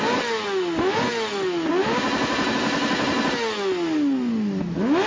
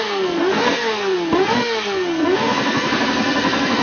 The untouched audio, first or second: first